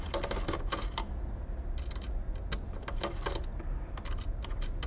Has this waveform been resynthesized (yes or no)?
no